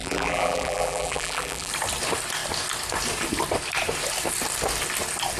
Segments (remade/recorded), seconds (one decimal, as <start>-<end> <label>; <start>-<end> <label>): 0.0-1.7 remade; 1.7-5.4 recorded